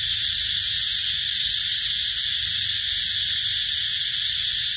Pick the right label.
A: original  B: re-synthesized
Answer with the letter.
A